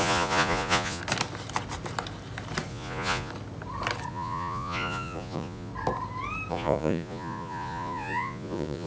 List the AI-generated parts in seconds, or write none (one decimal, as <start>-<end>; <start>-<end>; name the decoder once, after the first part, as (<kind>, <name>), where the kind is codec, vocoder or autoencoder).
0.0-1.0 (vocoder, Vocos); 2.7-3.3; 4.1-5.7; 6.5-8.9